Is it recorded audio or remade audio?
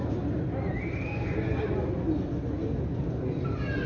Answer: recorded